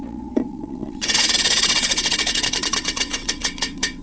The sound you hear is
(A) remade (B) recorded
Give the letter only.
A